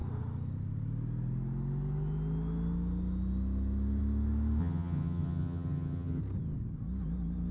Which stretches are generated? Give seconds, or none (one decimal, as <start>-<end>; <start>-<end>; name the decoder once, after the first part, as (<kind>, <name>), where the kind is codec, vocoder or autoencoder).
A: 4.6-6.2 (vocoder, HiFi-GAN)